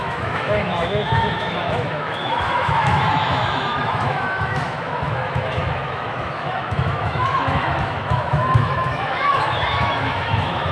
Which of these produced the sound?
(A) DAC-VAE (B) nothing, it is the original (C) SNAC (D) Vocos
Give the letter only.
A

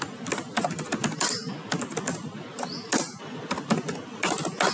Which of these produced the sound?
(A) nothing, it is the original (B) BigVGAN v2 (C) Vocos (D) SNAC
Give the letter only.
A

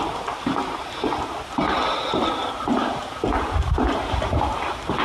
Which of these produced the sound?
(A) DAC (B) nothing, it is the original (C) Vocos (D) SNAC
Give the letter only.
B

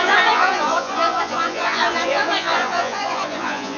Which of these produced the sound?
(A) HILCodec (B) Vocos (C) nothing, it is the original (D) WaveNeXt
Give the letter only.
B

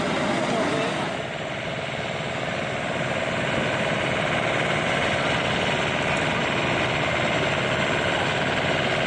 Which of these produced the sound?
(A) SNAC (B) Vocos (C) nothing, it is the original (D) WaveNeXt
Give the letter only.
C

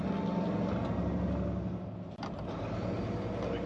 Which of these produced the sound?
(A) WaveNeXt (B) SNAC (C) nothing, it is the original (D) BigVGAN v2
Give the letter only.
C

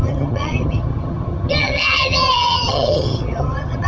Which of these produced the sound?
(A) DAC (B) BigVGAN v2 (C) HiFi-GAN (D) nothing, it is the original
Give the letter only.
C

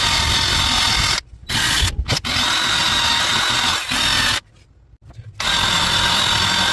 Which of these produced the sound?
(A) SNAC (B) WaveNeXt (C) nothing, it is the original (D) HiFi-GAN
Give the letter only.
C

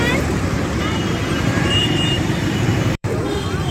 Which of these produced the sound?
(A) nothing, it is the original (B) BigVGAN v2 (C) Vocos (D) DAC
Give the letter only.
B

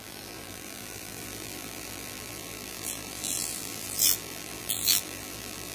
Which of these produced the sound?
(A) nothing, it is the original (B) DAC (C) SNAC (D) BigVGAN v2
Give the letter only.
D